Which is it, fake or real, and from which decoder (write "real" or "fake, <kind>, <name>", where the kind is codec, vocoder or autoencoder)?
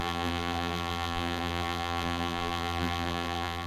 fake, vocoder, BigVGAN v2